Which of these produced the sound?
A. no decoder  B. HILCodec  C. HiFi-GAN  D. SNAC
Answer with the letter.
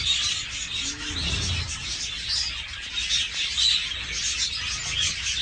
A